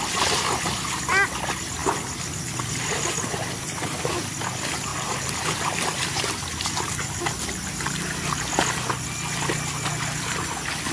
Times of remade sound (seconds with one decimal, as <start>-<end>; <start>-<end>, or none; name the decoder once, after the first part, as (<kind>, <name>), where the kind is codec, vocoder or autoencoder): 4.9-8.5 (vocoder, BigVGAN v2)